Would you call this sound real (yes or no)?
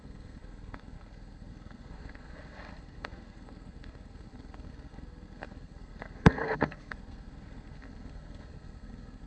no